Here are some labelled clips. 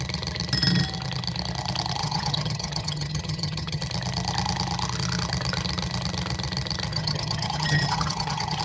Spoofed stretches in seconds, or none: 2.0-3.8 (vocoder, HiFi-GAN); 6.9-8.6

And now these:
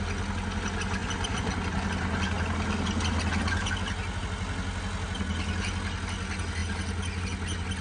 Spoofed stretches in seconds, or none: none

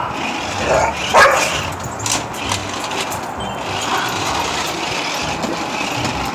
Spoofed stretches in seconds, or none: none

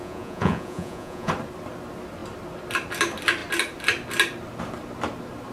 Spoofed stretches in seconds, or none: 0.0-1.3 (vocoder, Vocos)

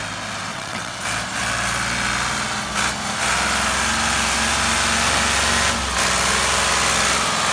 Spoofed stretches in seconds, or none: 0.5-1.0 (vocoder, WaveNeXt)

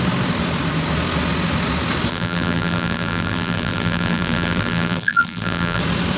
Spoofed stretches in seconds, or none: 2.1-5.8 (vocoder, BigVGAN v2)

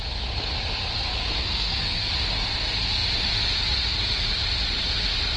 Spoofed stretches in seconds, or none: 1.4-2.1 (codec, SNAC)

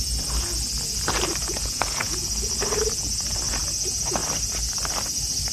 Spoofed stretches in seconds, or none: 1.4-2.3 (vocoder, Vocos)